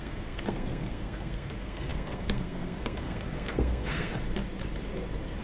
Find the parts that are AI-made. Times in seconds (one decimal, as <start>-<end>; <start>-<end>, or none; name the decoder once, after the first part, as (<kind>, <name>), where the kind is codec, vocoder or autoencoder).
0.0-4.1 (codec, SNAC)